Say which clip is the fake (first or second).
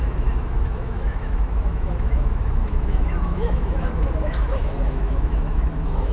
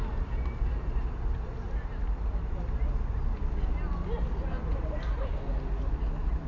first